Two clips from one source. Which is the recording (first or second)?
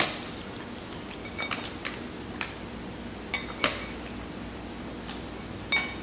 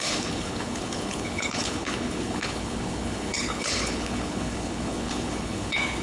first